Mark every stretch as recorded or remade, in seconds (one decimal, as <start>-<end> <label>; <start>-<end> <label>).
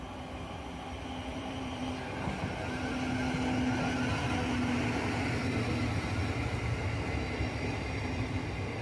0.0-1.3 recorded; 1.3-1.9 remade; 1.9-8.8 recorded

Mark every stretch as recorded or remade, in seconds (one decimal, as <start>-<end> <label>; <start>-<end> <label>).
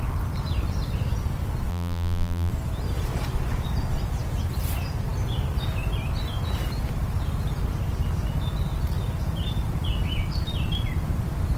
0.0-1.7 recorded; 1.7-2.5 remade; 2.5-11.6 recorded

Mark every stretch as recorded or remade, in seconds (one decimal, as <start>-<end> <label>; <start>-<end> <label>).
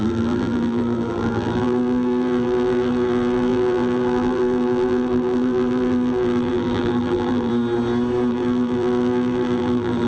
0.0-7.5 remade; 7.5-8.3 recorded; 8.3-10.1 remade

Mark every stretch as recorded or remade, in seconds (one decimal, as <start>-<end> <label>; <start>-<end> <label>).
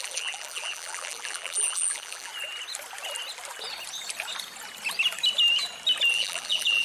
0.0-2.3 remade; 2.3-6.1 recorded; 6.1-6.8 remade